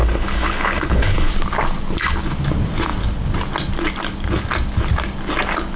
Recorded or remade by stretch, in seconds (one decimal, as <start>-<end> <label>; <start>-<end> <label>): 0.0-1.3 remade; 1.3-5.8 recorded